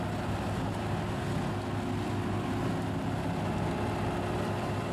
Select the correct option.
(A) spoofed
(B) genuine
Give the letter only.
B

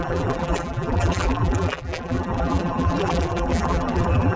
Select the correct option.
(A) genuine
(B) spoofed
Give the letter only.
B